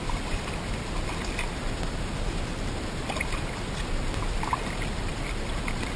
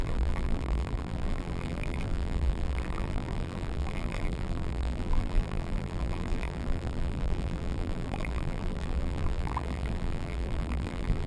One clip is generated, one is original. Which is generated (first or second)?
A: second